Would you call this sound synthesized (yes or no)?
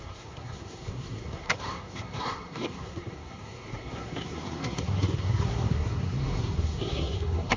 yes